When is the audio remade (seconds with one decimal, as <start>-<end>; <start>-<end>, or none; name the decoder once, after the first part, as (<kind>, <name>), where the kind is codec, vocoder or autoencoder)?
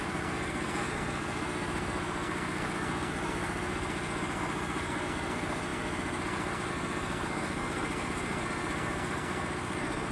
0.0-10.1 (codec, SNAC)